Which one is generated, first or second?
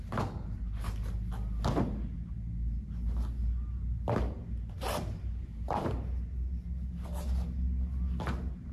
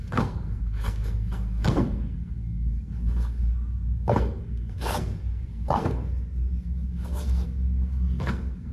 second